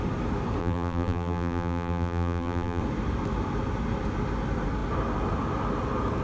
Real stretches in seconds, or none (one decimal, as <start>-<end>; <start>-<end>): 0.0-0.6; 2.8-6.2